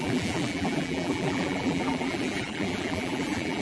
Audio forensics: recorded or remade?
remade